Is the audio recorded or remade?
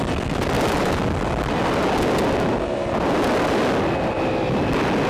recorded